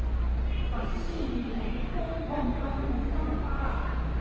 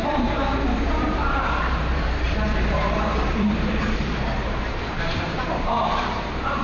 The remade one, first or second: second